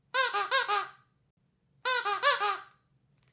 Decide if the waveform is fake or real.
real